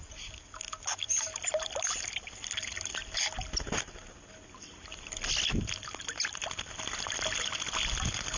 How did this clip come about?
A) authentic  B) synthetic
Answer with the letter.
A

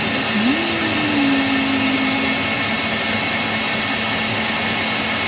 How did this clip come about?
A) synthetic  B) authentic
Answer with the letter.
B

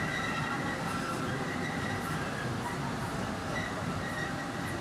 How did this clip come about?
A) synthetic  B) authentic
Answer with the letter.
B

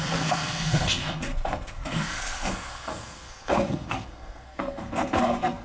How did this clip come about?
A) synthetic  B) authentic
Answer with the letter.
A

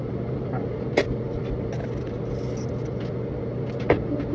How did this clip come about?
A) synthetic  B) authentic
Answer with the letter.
B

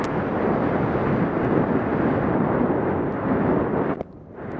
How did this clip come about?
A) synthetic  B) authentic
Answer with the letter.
B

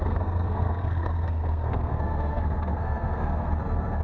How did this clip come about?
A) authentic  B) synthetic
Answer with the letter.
B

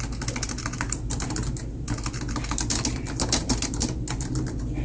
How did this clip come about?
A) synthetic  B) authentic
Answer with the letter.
B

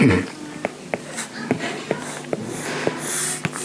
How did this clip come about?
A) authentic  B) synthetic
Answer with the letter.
A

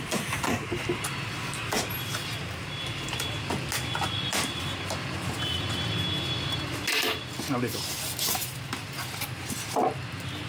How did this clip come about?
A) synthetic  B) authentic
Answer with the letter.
B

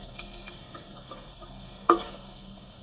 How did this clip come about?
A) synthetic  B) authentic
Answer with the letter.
A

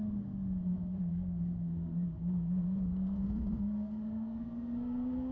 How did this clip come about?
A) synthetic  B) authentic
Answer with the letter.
A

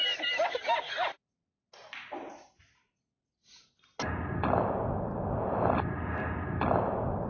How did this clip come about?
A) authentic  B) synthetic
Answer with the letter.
A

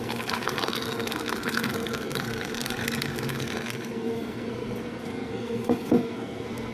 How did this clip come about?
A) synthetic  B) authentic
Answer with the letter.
A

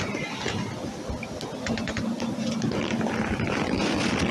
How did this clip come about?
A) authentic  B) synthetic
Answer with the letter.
A